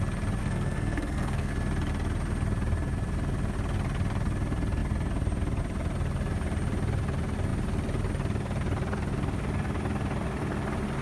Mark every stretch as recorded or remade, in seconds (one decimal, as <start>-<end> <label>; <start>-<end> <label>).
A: 0.0-0.4 recorded; 0.4-1.5 remade; 1.5-11.0 recorded